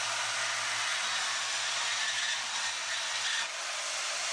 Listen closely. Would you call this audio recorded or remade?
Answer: recorded